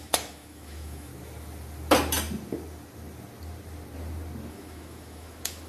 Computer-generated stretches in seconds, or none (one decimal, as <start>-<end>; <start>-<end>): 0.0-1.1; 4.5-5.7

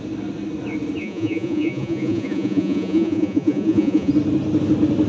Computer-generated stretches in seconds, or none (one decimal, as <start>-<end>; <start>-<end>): 1.0-4.1

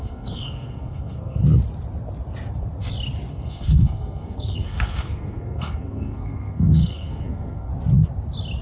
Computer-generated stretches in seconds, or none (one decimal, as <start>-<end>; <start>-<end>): 0.0-1.4; 3.3-7.7

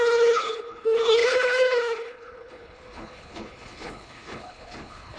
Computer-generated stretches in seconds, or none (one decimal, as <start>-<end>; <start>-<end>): 0.0-5.2

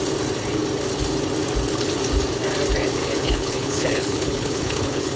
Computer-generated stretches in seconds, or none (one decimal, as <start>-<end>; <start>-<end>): 3.0-5.2

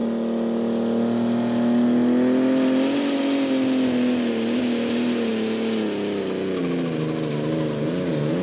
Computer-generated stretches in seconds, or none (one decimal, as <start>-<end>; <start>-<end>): none

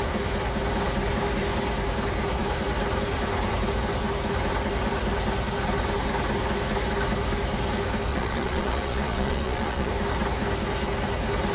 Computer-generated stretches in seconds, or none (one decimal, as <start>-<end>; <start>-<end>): 8.1-9.9

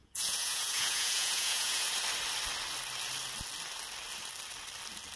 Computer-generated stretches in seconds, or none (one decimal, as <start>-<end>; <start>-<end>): 0.0-1.9